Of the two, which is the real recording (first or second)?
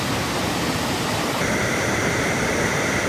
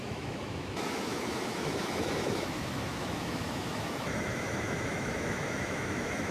first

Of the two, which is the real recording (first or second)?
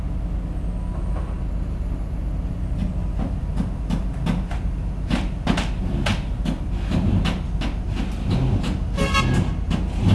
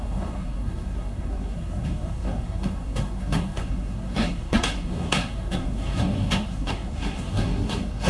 first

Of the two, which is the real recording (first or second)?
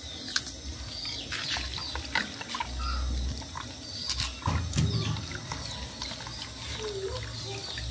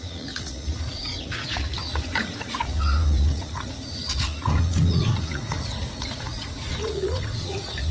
first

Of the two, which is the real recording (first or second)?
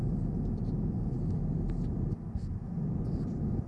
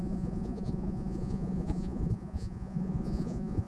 first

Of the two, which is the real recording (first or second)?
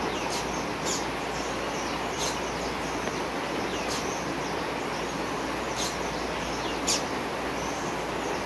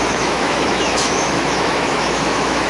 first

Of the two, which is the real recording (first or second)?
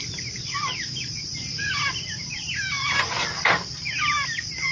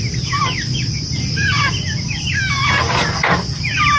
second